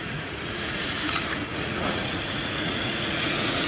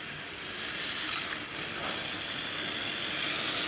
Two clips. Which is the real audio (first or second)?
second